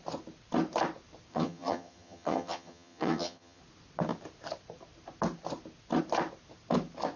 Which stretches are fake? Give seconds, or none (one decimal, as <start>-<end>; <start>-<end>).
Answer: 1.3-3.6